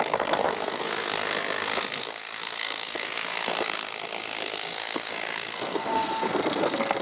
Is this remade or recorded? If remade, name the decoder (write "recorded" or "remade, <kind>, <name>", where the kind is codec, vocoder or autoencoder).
remade, codec, SNAC